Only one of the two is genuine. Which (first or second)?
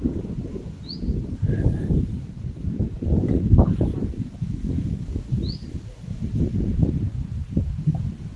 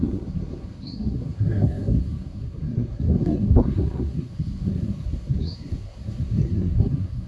first